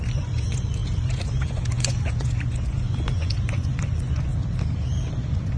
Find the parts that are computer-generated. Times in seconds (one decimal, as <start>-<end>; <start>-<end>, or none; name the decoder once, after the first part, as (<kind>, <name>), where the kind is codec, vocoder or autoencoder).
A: 0.0-4.3 (vocoder, Vocos); 5.1-5.6